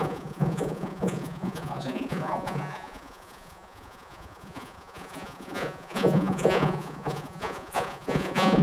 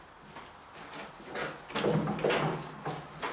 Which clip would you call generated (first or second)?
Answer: first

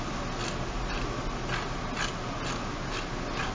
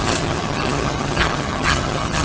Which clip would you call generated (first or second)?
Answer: second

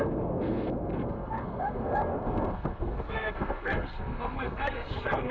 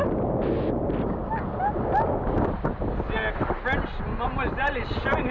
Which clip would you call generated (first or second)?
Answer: first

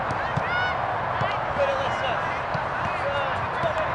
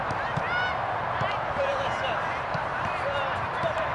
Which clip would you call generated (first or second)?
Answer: second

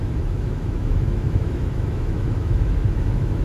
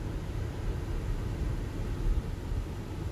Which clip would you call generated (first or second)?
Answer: first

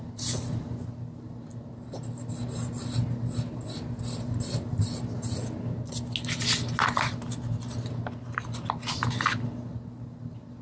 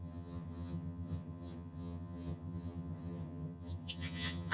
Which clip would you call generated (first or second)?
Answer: second